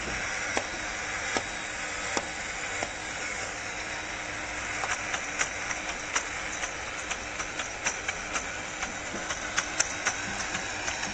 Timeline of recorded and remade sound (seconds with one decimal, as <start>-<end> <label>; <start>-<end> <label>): 0.0-3.0 recorded; 3.0-3.9 remade; 3.9-11.1 recorded